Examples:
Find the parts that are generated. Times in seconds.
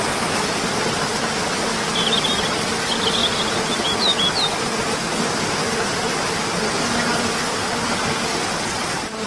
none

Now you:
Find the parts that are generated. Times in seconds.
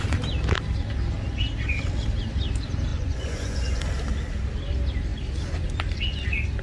2.9-3.8 (vocoder, Vocos)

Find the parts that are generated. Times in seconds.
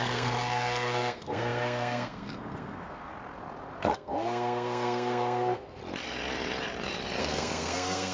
0.0-3.1 (codec, SNAC); 3.8-5.8; 7.2-8.1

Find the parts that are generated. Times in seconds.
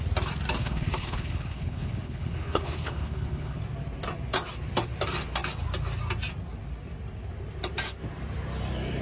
0.6-3.6 (codec, HILCodec)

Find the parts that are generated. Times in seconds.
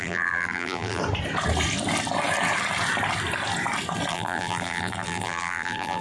0.0-1.0 (vocoder, BigVGAN v2); 4.1-6.0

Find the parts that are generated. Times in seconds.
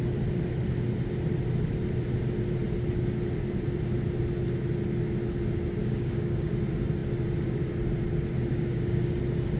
5.8-6.5 (codec, DAC); 8.5-9.2